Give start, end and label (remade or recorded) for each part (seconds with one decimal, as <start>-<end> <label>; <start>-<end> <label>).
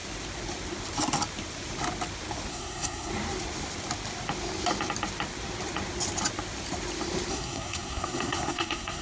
0.0-2.5 recorded; 2.5-3.1 remade; 3.1-7.3 recorded; 7.3-9.0 remade